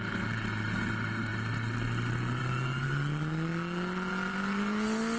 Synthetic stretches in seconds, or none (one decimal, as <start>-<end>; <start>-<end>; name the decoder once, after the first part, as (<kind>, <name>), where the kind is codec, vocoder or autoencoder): none